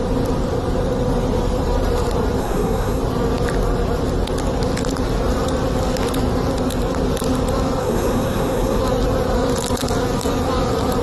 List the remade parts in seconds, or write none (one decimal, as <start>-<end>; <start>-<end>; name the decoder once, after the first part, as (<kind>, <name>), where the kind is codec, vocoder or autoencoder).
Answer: 2.4-3.0 (codec, SNAC); 7.8-8.8